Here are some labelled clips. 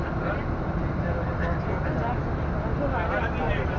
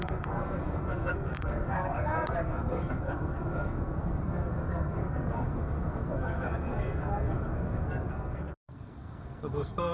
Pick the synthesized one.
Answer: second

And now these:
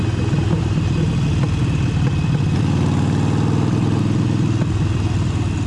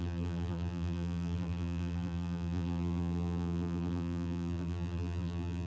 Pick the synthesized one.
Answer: second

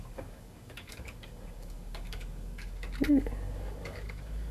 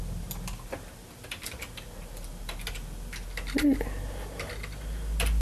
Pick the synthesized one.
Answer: first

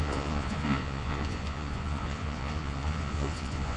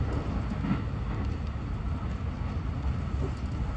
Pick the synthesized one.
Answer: first